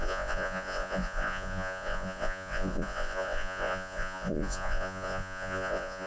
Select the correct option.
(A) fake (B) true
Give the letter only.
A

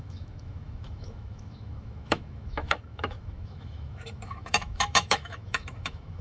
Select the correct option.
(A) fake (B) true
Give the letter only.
A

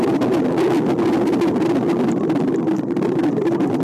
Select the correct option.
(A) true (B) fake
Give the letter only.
A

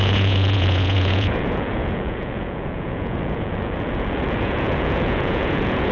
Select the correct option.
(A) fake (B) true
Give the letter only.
A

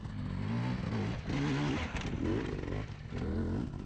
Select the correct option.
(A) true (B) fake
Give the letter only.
A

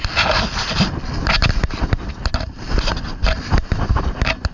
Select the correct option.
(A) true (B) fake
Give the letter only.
A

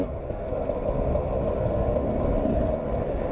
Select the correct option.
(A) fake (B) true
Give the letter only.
B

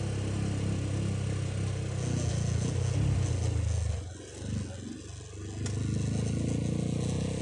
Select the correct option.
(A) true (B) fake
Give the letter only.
A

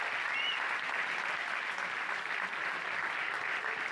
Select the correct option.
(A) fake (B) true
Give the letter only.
B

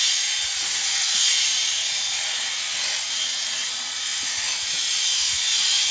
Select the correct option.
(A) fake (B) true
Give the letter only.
A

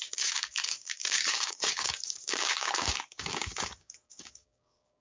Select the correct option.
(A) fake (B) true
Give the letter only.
A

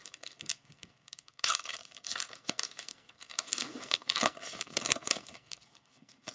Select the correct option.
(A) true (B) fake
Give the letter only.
B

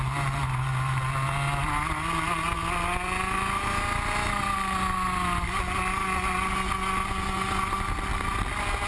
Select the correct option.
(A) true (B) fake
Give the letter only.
A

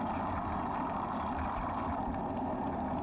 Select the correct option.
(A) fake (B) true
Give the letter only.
B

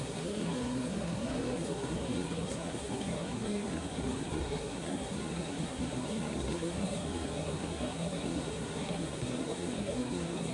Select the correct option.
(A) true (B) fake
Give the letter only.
B